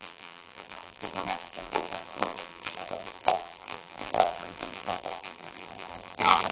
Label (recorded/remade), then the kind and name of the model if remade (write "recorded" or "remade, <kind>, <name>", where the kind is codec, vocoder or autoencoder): remade, vocoder, BigVGAN v2